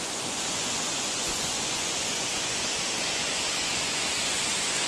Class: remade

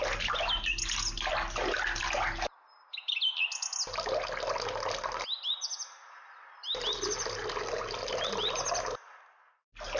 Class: recorded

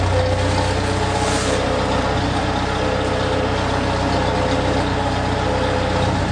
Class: recorded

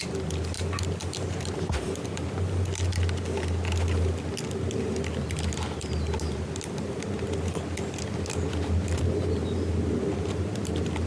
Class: recorded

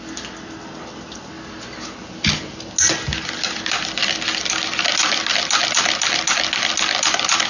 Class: recorded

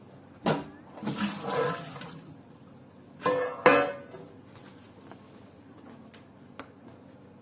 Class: recorded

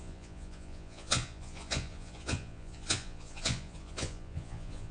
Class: remade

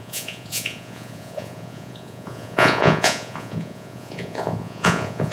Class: remade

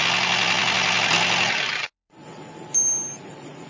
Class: recorded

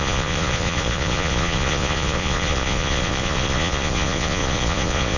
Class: remade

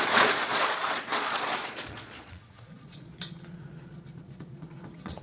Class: remade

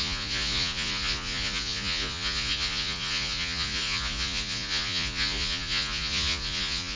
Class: remade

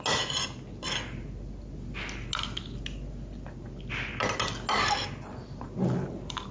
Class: recorded